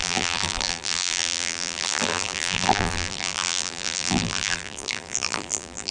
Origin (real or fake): fake